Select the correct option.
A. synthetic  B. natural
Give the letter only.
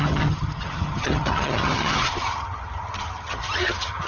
A